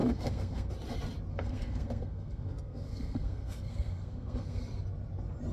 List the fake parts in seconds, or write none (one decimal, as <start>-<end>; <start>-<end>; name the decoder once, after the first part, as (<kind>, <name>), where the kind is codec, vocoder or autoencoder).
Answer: 0.0-0.7 (codec, SNAC); 1.3-4.6